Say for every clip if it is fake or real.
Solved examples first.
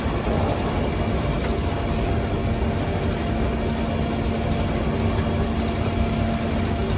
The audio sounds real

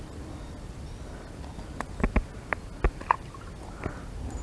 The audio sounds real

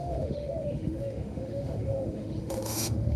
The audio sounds fake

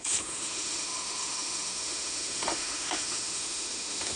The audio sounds fake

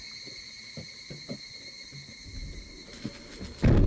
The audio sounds real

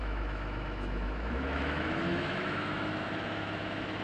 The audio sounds fake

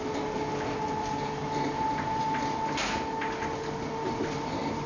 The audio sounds real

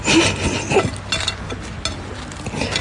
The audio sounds real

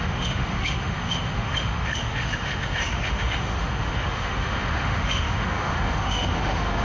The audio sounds fake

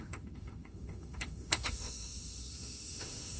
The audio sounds fake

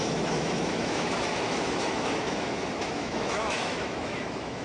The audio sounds fake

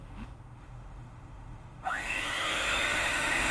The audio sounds fake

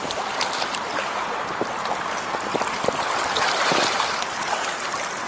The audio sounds real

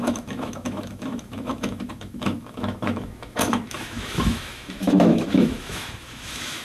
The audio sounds fake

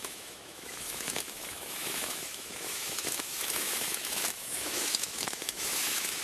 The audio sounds fake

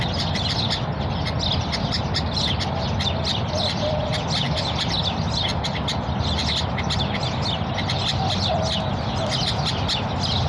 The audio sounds real